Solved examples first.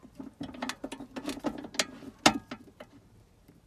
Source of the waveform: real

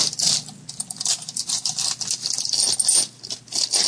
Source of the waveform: real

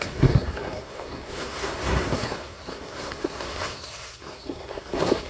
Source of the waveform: fake